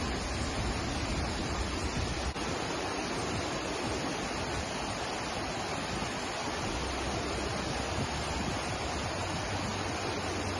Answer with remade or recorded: recorded